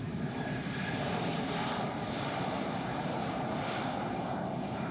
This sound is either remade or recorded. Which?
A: remade